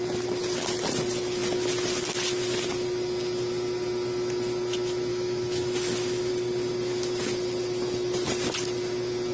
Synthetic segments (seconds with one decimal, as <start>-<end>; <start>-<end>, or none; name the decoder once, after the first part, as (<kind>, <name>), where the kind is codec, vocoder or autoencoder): 5.1-6.3 (autoencoder, DAC-VAE)